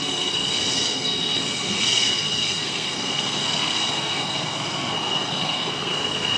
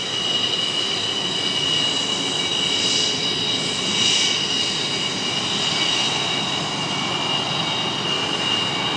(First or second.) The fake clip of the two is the first